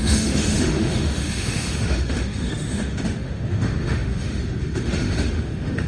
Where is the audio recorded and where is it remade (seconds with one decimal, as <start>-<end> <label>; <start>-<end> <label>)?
0.0-5.9 remade